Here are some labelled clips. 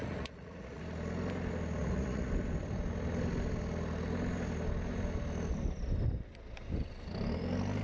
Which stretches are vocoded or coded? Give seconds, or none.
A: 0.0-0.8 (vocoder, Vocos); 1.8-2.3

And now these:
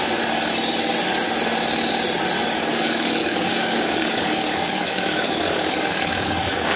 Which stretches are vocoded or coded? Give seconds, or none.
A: 2.7-6.8 (codec, DAC)